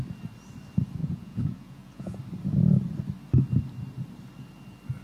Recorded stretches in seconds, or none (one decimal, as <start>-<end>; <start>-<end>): 0.0-1.0; 2.2-5.0